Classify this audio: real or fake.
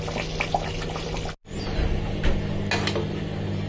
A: real